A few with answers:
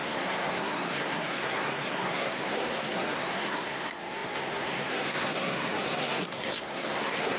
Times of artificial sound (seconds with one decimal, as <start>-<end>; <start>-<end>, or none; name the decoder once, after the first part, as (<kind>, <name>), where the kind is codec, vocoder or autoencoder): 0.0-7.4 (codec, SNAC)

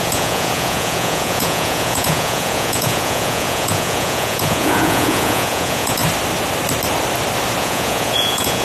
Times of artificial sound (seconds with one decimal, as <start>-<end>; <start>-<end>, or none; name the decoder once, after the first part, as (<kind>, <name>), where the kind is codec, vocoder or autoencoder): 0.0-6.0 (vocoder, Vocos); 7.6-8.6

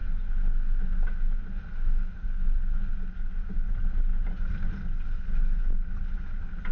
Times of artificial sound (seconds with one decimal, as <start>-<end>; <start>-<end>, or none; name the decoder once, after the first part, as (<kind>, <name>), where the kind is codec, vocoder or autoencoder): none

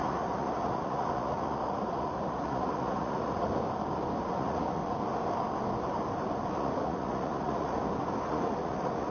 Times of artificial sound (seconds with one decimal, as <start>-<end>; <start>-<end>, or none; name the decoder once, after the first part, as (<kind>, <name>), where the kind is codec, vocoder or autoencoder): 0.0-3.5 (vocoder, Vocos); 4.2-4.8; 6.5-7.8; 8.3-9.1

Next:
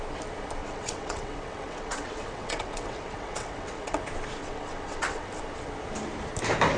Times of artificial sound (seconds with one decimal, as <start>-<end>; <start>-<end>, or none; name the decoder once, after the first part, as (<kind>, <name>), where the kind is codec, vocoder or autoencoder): 0.6-4.0 (vocoder, WaveNeXt); 4.4-5.3

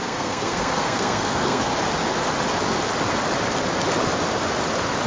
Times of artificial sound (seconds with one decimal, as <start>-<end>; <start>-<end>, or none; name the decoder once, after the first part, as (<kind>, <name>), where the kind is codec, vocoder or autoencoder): 0.0-1.7 (codec, SNAC)

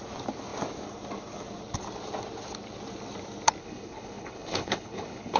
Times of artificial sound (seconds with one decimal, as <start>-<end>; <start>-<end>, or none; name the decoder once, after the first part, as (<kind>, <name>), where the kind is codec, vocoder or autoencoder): 3.6-5.4 (codec, HILCodec)